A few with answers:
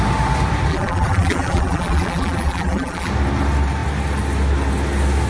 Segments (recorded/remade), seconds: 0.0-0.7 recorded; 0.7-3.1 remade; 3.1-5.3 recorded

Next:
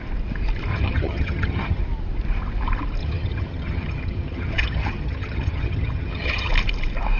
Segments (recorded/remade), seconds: 0.0-0.7 recorded; 0.7-1.8 remade; 1.8-3.0 recorded; 3.0-6.5 remade; 6.5-7.2 recorded

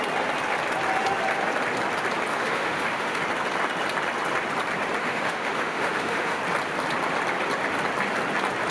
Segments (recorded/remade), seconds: 0.0-2.3 recorded; 2.3-3.2 remade; 3.2-5.0 recorded; 5.0-6.4 remade; 6.4-8.7 recorded

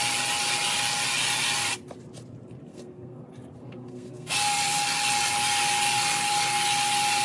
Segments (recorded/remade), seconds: 0.0-2.7 recorded; 2.7-3.2 remade; 3.2-3.6 recorded; 3.6-4.3 remade; 4.3-7.2 recorded

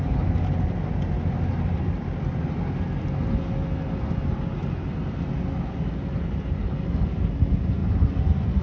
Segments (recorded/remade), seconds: 0.0-8.6 recorded

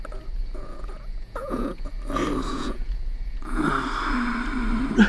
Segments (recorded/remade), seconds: 0.0-0.4 recorded; 0.4-1.9 remade; 1.9-2.5 recorded; 2.5-3.6 remade; 3.6-5.1 recorded

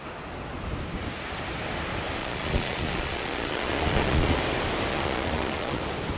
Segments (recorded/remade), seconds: 0.0-2.2 recorded; 2.2-4.4 remade; 4.4-4.9 recorded; 4.9-5.8 remade; 5.8-6.2 recorded

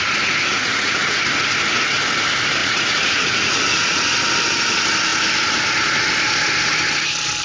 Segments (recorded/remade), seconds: 0.0-0.5 recorded; 0.5-1.2 remade; 1.2-2.6 recorded; 2.6-4.0 remade; 4.0-7.4 recorded